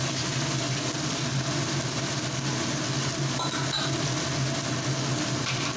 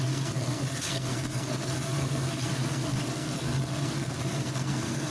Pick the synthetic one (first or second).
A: second